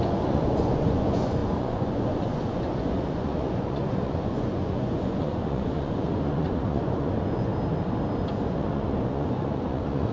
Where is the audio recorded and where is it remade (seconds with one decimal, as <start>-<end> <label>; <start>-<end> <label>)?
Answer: 0.0-7.5 remade; 7.5-8.3 recorded; 8.3-10.1 remade